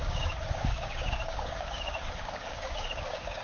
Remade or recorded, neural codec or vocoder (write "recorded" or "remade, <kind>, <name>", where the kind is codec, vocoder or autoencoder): remade, codec, DAC